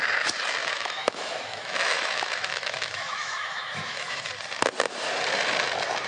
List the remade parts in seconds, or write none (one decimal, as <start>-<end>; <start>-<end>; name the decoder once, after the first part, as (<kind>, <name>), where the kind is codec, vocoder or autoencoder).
0.6-4.3 (autoencoder, DAC-VAE)